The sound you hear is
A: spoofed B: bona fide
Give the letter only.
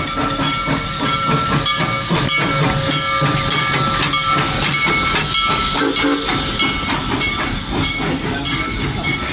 B